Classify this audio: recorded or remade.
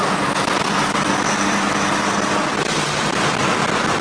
recorded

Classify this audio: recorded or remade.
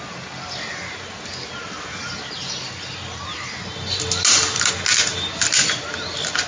recorded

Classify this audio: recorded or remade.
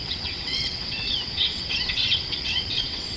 remade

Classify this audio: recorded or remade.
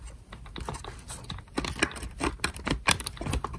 recorded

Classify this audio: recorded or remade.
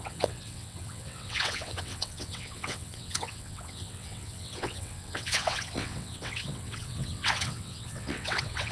remade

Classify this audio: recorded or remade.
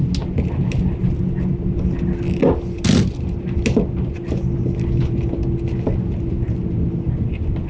recorded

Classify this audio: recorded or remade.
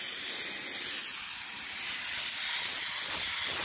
recorded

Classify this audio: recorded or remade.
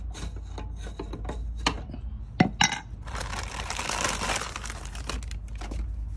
recorded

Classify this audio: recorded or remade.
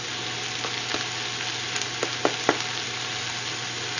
recorded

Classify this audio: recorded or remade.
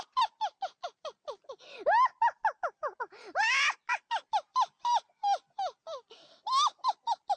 recorded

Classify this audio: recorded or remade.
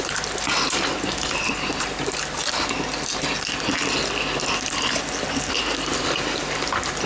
recorded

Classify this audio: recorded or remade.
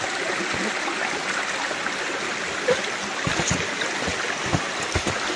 recorded